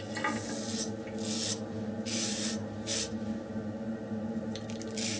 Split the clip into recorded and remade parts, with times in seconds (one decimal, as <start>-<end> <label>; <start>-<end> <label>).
0.0-5.2 recorded